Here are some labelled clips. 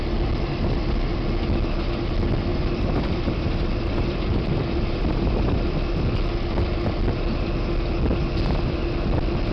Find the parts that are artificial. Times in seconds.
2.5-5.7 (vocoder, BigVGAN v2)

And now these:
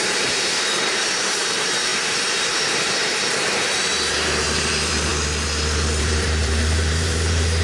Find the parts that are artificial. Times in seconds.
0.0-5.1 (vocoder, BigVGAN v2); 6.0-7.6

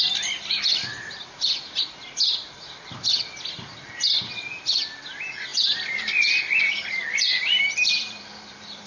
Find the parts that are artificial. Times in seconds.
5.5-8.9 (vocoder, BigVGAN v2)

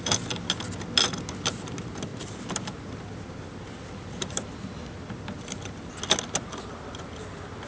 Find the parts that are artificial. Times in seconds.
2.1-5.9 (vocoder, BigVGAN v2)

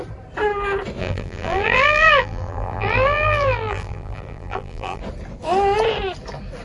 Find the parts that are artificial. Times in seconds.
1.0-5.0 (vocoder, BigVGAN v2)

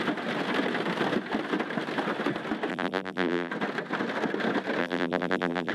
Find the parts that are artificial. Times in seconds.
2.7-3.5 (vocoder, BigVGAN v2); 4.8-5.7

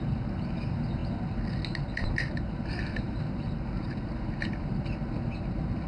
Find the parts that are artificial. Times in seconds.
0.0-1.0 (vocoder, BigVGAN v2); 1.9-5.9